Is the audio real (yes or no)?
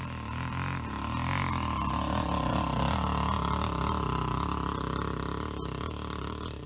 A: yes